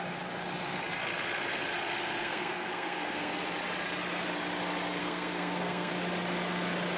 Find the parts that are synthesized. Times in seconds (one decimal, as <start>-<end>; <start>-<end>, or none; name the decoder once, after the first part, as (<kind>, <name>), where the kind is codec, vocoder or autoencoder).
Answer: 2.2-3.3 (codec, SNAC); 5.0-5.9